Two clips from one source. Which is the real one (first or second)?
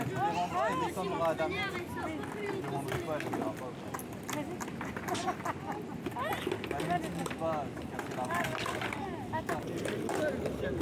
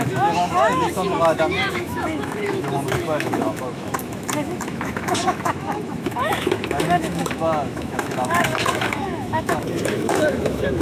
first